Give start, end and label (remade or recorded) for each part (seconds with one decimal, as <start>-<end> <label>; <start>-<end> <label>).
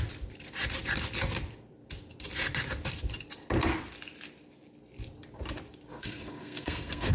0.0-5.9 recorded; 5.9-7.1 remade